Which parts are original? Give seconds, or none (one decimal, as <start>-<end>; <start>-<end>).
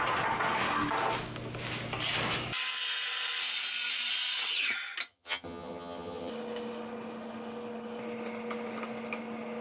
0.0-5.1; 6.3-9.6